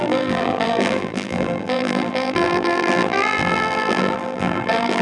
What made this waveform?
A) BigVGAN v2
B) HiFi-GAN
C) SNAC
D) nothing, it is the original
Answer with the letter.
A